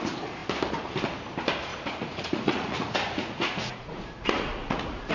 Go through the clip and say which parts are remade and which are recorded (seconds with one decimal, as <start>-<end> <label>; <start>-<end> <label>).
0.0-1.7 recorded; 1.7-5.1 remade